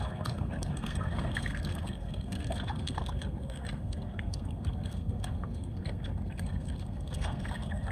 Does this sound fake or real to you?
fake